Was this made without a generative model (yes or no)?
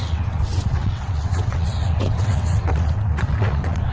no